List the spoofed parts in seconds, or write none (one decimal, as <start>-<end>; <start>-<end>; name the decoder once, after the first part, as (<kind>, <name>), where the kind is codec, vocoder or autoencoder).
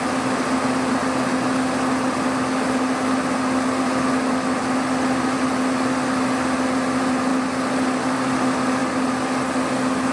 none